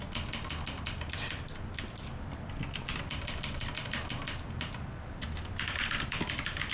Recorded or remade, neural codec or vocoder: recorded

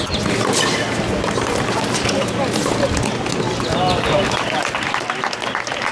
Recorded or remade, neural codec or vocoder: recorded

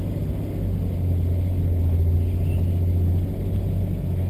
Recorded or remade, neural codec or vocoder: recorded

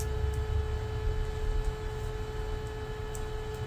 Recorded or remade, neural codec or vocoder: recorded